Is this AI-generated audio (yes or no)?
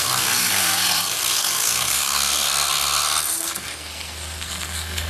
yes